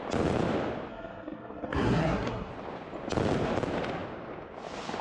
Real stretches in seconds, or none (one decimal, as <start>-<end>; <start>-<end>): 0.0-0.9; 2.5-5.0